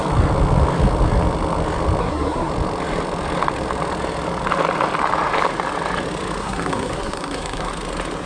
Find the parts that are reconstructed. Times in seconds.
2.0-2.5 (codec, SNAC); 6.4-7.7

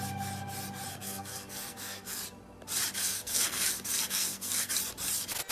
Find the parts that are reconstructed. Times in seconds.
0.9-2.2 (codec, SNAC); 3.0-4.7

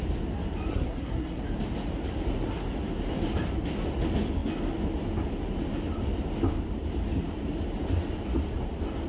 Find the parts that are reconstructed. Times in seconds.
0.7-1.4 (codec, SNAC)

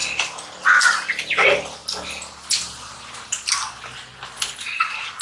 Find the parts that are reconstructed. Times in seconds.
none

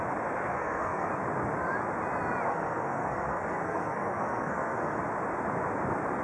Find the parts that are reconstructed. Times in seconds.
0.5-1.1 (codec, SNAC); 2.5-5.0